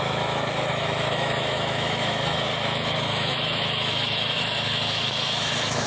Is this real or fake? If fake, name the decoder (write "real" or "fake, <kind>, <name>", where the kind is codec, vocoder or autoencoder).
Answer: fake, autoencoder, DAC-VAE